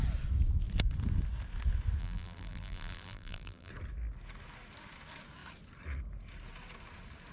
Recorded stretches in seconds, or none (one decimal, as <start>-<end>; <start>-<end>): 0.0-2.0; 3.7-7.3